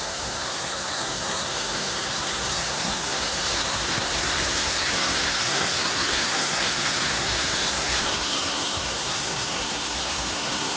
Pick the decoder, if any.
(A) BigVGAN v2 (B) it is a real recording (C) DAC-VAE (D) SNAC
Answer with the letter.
D